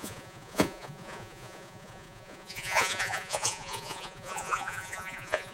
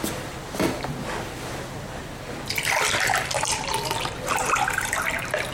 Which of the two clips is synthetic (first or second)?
first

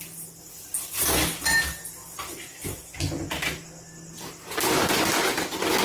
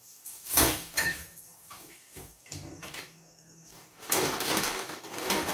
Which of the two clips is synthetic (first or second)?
second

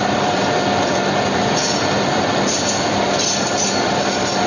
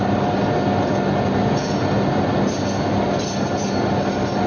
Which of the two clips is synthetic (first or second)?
first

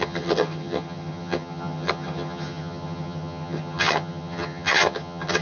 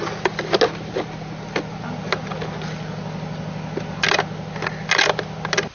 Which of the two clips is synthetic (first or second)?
first